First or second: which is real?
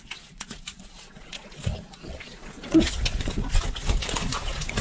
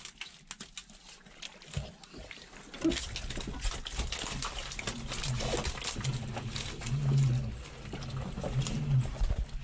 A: second